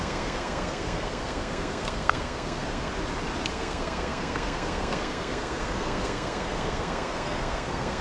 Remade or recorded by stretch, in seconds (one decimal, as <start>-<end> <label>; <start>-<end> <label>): 0.0-2.9 remade; 2.9-3.5 recorded; 3.5-8.0 remade